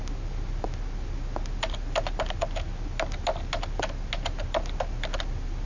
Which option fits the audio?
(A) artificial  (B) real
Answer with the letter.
B